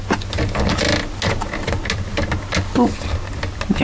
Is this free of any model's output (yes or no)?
yes